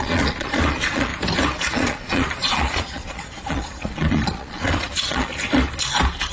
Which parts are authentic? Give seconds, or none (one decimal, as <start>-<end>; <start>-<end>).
1.1-1.7; 5.3-6.3